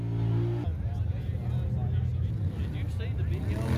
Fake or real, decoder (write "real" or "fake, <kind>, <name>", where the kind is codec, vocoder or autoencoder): real